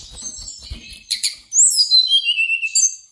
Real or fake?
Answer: real